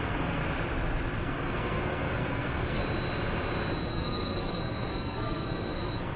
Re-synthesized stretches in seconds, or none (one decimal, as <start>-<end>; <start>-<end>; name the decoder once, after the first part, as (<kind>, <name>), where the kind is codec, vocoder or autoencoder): 0.0-0.4 (codec, SNAC); 1.2-2.8; 3.9-6.2